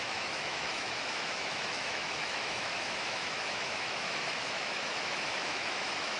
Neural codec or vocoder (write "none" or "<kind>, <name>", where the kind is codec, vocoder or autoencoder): autoencoder, DAC-VAE